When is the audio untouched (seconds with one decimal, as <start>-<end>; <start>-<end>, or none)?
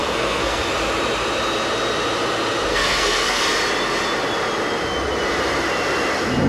0.7-2.7; 3.4-6.5